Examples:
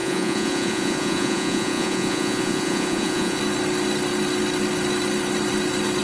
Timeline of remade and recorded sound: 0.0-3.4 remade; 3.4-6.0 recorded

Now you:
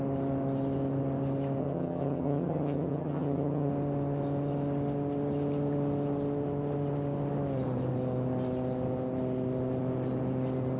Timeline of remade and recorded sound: 0.0-1.6 recorded; 1.6-3.7 remade; 3.7-10.8 recorded

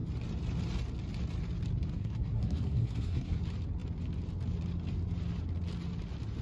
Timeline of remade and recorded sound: 0.0-1.9 recorded; 1.9-3.4 remade; 3.4-6.4 recorded

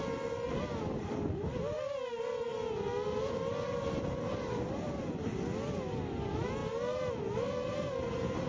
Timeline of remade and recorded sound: 0.0-8.5 recorded

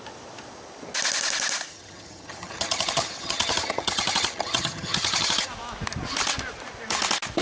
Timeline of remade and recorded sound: 0.0-1.7 recorded; 1.7-5.5 remade; 5.5-7.4 recorded

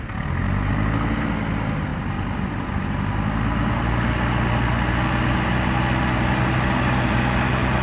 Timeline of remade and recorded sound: 0.0-7.8 recorded